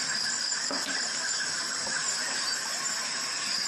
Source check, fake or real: real